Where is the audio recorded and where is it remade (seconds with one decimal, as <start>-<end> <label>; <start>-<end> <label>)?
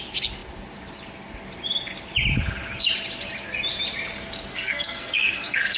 0.0-4.5 recorded; 4.5-5.8 remade